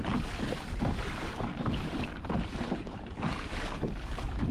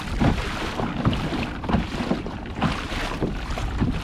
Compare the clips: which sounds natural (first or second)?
second